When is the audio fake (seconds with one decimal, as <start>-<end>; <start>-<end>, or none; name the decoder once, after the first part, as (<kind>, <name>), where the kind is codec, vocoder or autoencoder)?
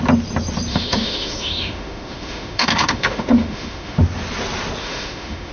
0.7-4.0 (autoencoder, DAC-VAE); 4.8-5.5